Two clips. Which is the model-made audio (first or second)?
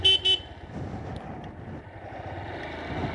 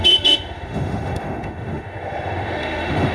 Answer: second